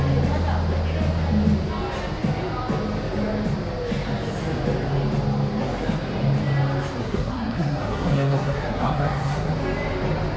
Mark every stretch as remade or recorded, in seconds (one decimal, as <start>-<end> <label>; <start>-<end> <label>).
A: 0.0-7.0 recorded; 7.0-9.5 remade; 9.5-10.4 recorded